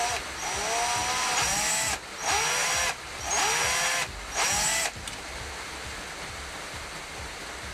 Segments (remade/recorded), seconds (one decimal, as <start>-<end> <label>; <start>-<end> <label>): 0.0-7.7 recorded